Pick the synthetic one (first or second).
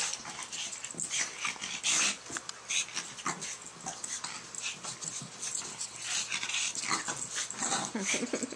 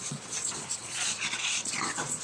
second